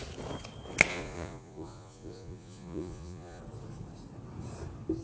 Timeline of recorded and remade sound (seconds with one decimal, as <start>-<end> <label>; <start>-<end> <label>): 0.0-0.9 recorded; 0.9-3.4 remade; 3.4-5.0 recorded